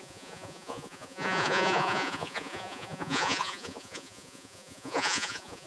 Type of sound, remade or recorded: remade